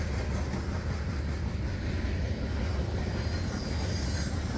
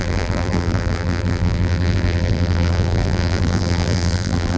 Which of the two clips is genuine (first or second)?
first